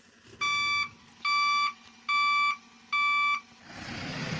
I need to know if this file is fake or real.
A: real